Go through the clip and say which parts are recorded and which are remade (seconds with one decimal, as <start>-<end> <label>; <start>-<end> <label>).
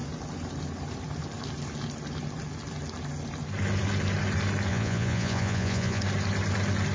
0.0-4.7 recorded; 4.7-6.0 remade; 6.0-6.9 recorded